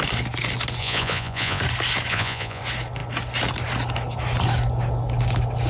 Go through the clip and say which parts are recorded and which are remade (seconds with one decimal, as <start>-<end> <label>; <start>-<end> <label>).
0.0-0.8 recorded; 0.8-1.6 remade; 1.6-2.1 recorded; 2.1-2.6 remade; 2.6-5.7 recorded